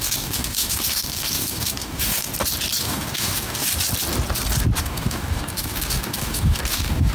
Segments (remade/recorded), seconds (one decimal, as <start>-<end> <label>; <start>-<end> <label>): 0.0-2.3 remade; 2.3-2.8 recorded; 2.8-3.7 remade; 3.7-4.8 recorded; 4.8-7.1 remade